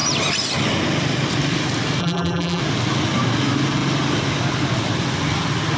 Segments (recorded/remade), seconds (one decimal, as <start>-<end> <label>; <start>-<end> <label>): 0.0-2.0 recorded; 2.0-2.6 remade; 2.6-5.8 recorded